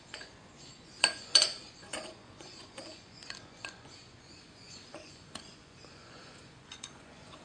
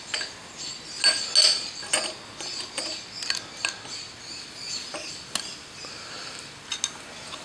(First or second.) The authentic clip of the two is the second